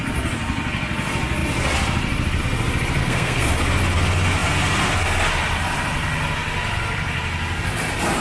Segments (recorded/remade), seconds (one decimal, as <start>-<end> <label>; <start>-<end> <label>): 0.0-3.0 recorded; 3.0-3.5 remade; 3.5-8.2 recorded

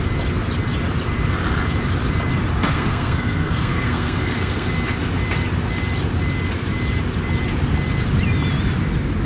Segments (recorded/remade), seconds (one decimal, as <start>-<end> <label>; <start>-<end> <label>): 0.0-2.7 recorded; 2.7-4.7 remade; 4.7-9.2 recorded

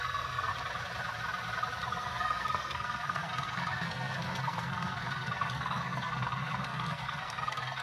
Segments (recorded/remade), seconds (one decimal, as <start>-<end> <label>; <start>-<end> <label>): 0.0-0.5 remade; 0.5-2.0 recorded; 2.0-7.8 remade

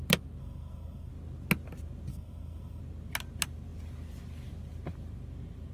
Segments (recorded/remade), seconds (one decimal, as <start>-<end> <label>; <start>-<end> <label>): 0.0-0.4 recorded; 0.4-1.1 remade; 1.1-2.1 recorded; 2.1-2.8 remade; 2.8-5.7 recorded